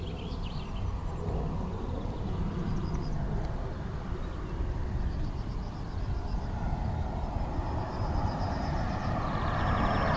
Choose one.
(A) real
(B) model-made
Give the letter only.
A